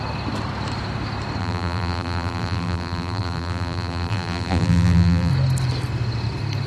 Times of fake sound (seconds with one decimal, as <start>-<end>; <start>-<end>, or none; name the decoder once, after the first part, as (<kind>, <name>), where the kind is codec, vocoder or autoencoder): 1.4-5.3 (vocoder, BigVGAN v2)